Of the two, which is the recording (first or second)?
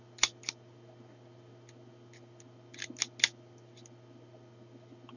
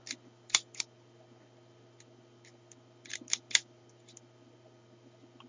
first